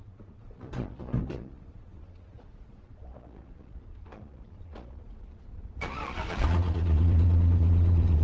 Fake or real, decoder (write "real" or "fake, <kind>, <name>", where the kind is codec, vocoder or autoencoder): fake, vocoder, Vocos